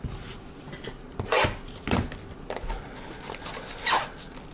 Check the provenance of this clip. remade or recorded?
recorded